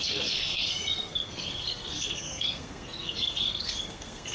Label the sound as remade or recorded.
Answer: remade